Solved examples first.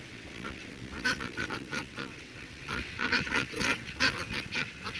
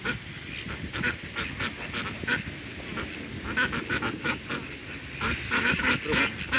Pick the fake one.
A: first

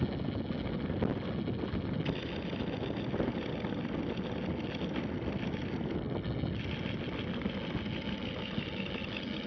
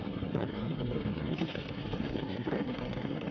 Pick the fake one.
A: second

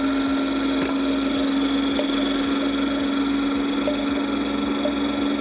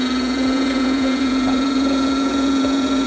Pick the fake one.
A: second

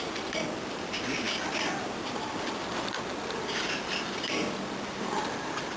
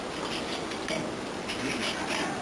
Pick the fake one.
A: first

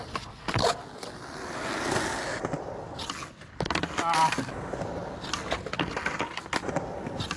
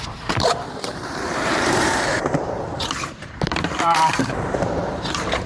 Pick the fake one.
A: second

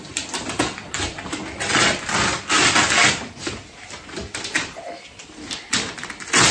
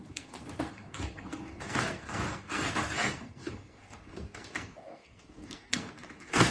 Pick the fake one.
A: second